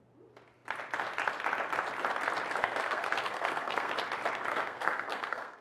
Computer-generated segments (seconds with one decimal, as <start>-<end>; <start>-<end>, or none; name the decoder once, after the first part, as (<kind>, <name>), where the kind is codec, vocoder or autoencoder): 2.6-3.9 (codec, SNAC); 4.5-5.6